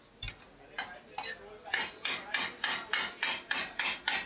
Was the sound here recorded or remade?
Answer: recorded